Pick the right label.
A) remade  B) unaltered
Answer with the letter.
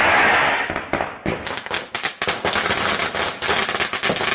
B